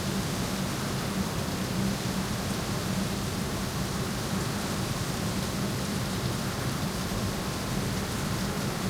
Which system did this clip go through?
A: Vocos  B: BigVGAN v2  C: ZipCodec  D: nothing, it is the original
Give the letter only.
B